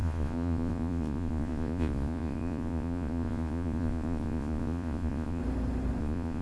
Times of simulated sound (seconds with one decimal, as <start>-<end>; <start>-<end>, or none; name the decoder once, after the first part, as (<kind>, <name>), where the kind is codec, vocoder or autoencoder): 0.0-5.4 (vocoder, Vocos); 6.0-6.4